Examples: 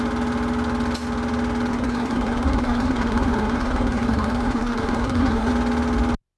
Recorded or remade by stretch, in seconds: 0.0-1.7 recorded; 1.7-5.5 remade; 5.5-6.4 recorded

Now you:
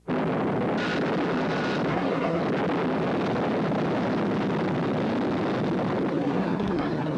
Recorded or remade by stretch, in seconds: 0.0-1.9 recorded; 1.9-2.4 remade; 2.4-6.1 recorded; 6.1-7.2 remade